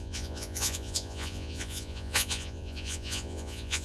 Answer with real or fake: fake